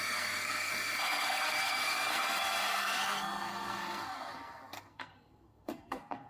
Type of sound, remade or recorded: remade